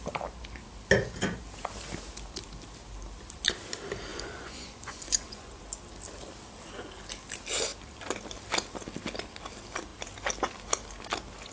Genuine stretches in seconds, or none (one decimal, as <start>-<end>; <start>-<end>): 0.0-4.1; 5.6-11.5